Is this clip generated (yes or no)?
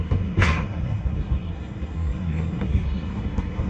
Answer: yes